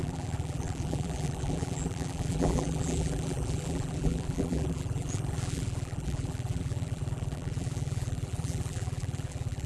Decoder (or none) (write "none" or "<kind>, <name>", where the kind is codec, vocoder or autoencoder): vocoder, BigVGAN v2